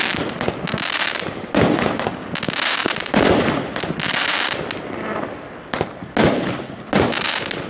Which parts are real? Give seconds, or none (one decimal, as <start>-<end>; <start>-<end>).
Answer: 0.0-2.8; 3.4-7.7